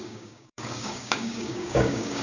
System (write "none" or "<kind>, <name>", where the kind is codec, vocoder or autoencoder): codec, DAC